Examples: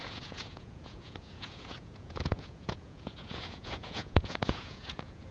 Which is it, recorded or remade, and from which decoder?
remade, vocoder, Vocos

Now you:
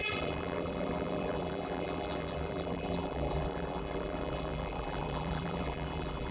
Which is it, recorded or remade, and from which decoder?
remade, vocoder, BigVGAN v2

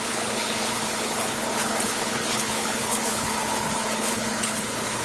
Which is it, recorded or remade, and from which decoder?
remade, codec, HILCodec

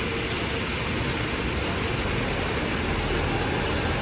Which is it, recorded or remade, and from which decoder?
recorded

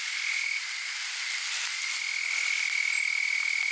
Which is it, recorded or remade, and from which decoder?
recorded